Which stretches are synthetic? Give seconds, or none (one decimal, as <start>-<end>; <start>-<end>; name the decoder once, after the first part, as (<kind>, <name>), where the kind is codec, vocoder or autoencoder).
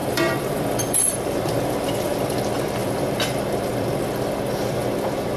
0.0-2.4 (vocoder, BigVGAN v2); 2.8-4.1